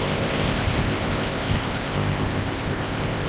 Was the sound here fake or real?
fake